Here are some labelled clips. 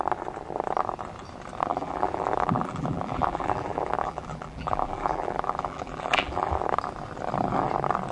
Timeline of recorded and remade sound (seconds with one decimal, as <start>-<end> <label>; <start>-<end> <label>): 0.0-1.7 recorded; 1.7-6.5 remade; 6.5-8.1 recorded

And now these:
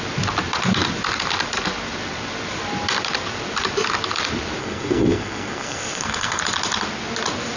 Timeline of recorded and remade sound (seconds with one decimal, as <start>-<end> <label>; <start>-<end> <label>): 0.0-4.6 recorded; 4.6-6.4 remade; 6.4-7.6 recorded

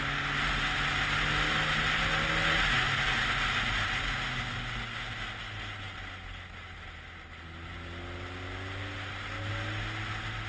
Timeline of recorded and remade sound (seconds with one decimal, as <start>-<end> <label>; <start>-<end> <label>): 0.0-10.5 recorded

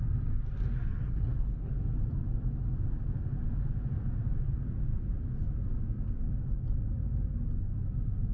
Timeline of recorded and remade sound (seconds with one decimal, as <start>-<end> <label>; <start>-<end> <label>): 0.0-1.1 recorded; 1.1-1.7 remade; 1.7-8.3 recorded